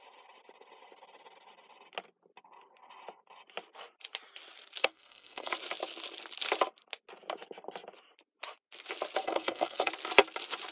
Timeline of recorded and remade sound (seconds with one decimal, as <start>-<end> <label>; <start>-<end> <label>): 0.0-4.8 recorded; 4.8-5.5 remade; 5.5-9.2 recorded; 9.2-9.9 remade; 9.9-10.7 recorded